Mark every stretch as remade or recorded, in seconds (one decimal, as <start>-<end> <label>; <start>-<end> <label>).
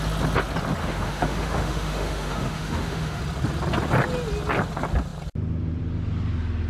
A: 0.0-0.8 recorded; 0.8-3.2 remade; 3.2-6.7 recorded